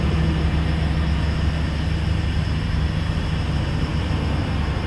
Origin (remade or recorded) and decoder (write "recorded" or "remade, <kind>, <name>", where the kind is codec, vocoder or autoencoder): recorded